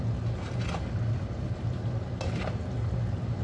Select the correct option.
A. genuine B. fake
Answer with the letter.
A